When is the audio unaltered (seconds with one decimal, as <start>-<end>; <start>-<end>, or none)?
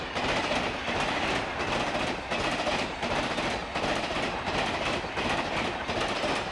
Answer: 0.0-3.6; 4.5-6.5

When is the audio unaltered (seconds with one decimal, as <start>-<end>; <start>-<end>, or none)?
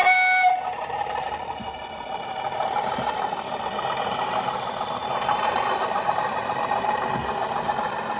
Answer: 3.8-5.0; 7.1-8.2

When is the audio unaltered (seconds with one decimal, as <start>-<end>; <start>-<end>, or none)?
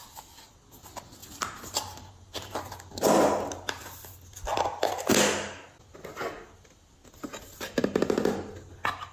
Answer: 0.0-1.2; 2.6-7.8; 8.5-9.1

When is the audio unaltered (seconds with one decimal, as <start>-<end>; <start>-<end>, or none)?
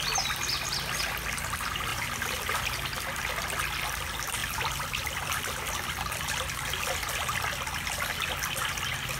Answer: 0.0-1.9; 2.4-4.4; 5.6-9.2